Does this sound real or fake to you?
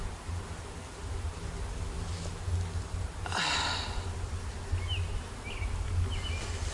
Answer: real